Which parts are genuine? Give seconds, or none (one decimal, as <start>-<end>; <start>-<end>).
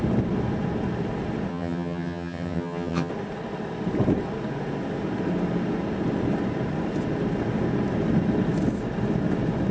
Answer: 0.0-1.5; 3.1-9.7